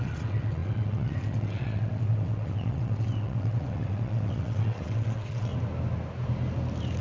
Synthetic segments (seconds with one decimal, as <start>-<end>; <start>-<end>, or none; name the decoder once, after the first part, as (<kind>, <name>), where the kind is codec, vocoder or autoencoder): 0.0-5.5 (vocoder, WaveNeXt)